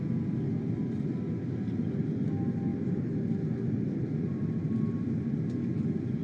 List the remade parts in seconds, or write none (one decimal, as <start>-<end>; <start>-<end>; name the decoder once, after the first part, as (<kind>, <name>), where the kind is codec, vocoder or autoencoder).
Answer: none